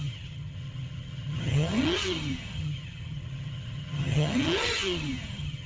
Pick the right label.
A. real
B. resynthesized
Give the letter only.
B